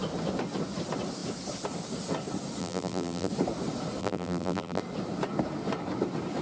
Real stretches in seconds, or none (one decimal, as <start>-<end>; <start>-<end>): 0.0-2.6; 3.3-4.0; 4.8-6.4